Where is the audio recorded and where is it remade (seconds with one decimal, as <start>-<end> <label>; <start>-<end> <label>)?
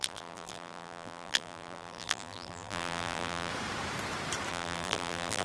0.0-3.5 remade; 3.5-4.5 recorded; 4.5-5.4 remade